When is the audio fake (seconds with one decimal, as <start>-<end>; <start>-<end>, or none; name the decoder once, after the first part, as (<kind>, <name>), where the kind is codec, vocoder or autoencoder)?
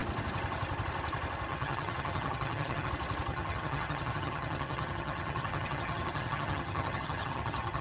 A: 1.5-2.9 (vocoder, HiFi-GAN); 3.3-7.8